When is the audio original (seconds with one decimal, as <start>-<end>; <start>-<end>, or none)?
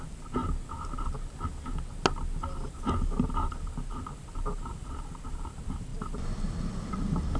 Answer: 0.4-3.5; 5.9-6.7